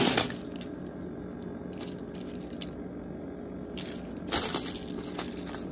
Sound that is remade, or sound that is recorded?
recorded